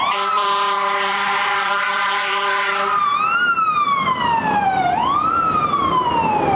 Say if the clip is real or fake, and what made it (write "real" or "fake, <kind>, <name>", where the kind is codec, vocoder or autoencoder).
fake, vocoder, BigVGAN v2